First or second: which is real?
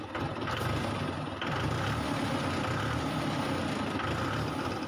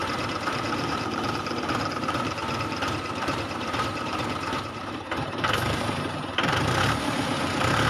first